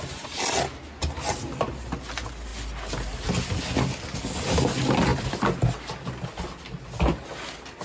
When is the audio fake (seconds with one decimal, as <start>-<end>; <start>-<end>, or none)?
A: none